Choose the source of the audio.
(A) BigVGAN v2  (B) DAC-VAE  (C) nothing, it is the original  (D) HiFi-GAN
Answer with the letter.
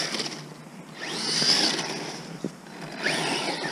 C